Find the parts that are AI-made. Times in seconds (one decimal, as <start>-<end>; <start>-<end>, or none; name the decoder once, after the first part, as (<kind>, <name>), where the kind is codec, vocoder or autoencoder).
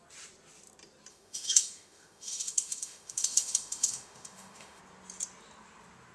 1.1-4.8 (autoencoder, DAC-VAE)